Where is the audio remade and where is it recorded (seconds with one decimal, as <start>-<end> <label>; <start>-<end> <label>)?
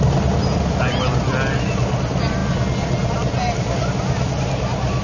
0.0-5.0 recorded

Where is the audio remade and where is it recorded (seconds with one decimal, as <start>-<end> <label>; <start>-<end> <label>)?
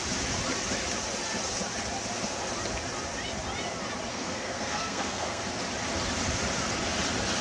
0.0-4.1 recorded; 4.1-5.4 remade; 5.4-7.4 recorded